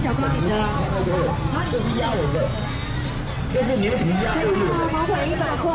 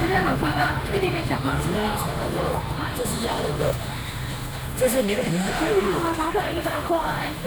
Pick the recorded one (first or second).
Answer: first